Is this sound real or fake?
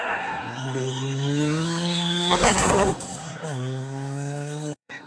fake